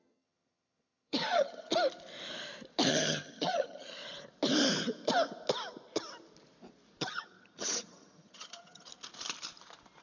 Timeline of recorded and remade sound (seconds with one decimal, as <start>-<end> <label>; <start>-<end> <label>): 0.0-1.7 remade; 1.7-2.9 recorded; 2.9-4.0 remade; 4.0-7.0 recorded; 7.0-8.9 remade; 8.9-10.0 recorded